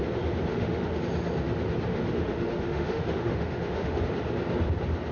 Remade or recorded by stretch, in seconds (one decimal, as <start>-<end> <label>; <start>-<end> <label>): 0.0-0.5 recorded; 0.5-1.0 remade; 1.0-1.9 recorded; 1.9-4.0 remade; 4.0-5.1 recorded